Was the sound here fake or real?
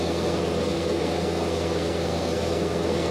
fake